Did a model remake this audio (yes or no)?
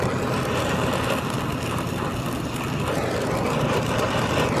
no